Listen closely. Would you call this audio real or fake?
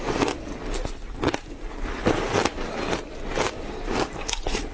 real